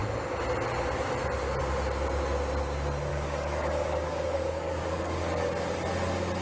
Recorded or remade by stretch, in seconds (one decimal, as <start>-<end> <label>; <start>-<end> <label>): 0.0-3.1 recorded; 3.1-5.5 remade; 5.5-6.4 recorded